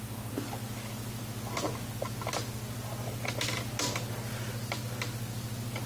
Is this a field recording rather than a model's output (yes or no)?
yes